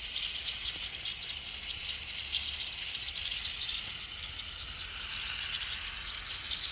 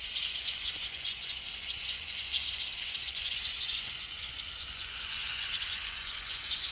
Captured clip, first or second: first